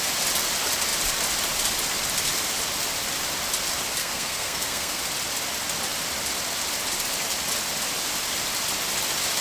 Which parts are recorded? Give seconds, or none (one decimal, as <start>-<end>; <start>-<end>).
0.0-4.0; 5.0-9.4